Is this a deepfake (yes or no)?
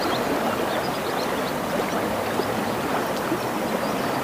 no